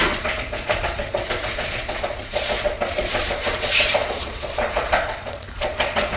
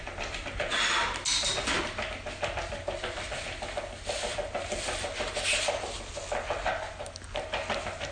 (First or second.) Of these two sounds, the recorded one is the second